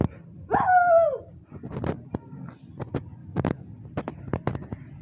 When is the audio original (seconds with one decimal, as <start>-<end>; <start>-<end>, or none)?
0.0-3.2; 3.7-5.0